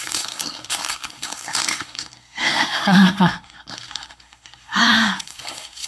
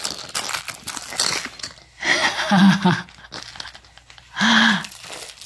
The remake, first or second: first